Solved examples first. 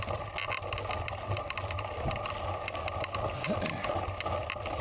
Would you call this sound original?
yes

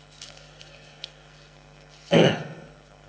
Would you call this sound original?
no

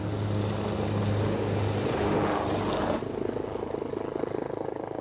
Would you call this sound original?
yes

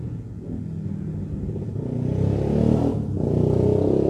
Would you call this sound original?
yes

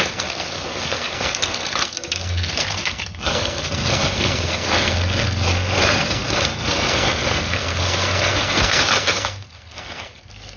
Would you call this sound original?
no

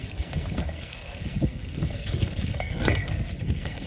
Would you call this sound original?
no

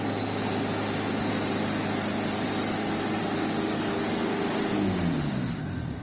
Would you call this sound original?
yes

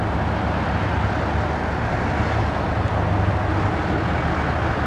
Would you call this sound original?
yes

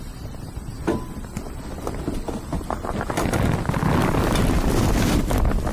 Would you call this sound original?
yes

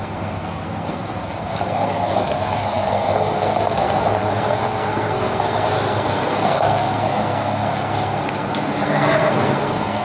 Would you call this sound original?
no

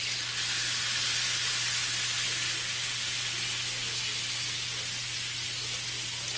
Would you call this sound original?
yes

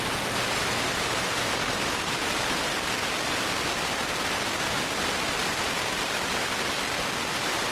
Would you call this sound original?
yes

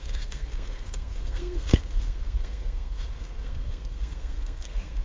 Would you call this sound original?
no